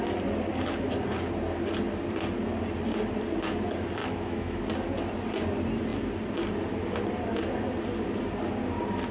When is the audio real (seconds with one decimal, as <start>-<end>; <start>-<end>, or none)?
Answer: 0.0-4.0; 4.6-9.1